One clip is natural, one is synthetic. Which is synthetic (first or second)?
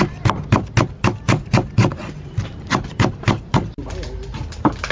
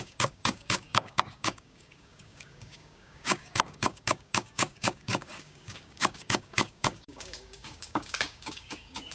second